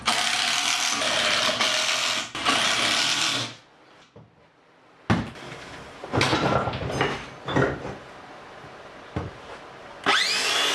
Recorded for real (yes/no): yes